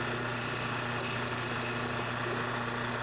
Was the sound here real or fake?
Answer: real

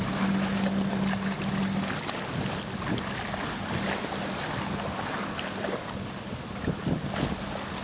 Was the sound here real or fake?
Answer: real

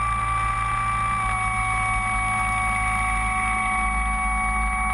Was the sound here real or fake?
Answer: real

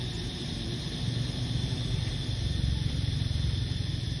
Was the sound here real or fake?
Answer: fake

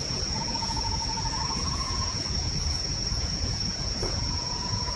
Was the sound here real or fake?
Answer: fake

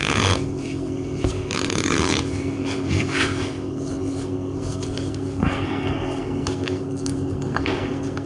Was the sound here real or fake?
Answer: fake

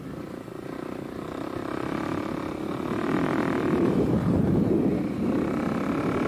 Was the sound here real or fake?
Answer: real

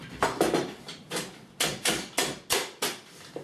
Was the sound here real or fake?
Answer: real